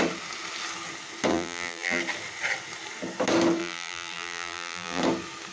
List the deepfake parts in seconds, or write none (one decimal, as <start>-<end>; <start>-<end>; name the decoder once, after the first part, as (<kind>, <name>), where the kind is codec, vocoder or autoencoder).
1.3-2.0 (vocoder, BigVGAN v2); 3.6-5.0